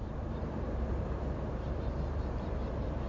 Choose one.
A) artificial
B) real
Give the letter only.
A